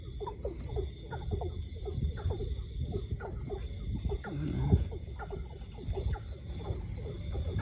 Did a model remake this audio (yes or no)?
no